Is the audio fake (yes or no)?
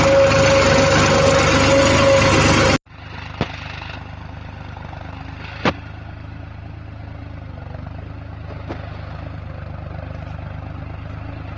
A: no